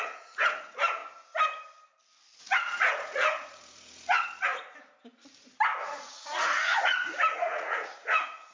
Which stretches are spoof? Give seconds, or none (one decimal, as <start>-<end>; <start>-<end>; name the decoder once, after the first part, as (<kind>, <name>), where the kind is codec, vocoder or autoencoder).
0.0-1.0 (vocoder, Vocos); 2.4-4.5; 5.8-8.5